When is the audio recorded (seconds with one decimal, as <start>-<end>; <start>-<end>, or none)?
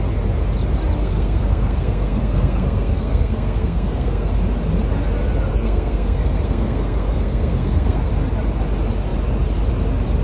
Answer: 0.0-1.0; 4.3-5.5; 8.1-10.2